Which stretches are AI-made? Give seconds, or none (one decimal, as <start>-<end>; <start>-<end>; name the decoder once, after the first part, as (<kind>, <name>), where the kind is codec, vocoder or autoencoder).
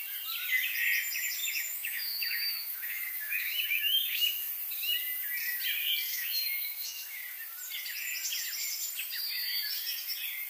1.4-4.5 (autoencoder, DAC-VAE); 6.1-7.2